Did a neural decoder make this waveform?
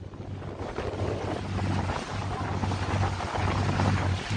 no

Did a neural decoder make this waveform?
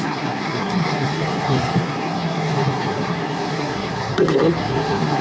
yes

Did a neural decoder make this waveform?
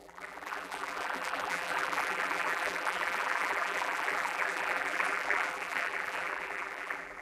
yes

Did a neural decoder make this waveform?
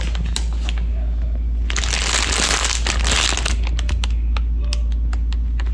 no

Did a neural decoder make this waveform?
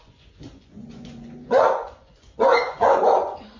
yes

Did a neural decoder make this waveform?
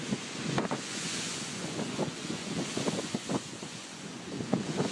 yes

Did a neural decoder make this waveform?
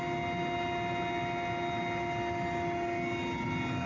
no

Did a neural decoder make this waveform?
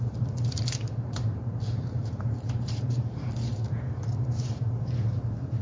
yes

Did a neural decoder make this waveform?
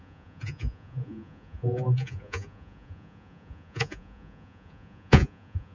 yes